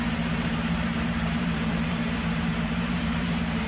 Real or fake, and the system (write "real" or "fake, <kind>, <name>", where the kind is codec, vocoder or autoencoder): fake, vocoder, BigVGAN v2